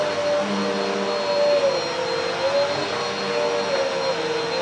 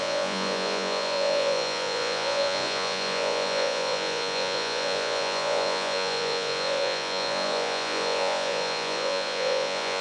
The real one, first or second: first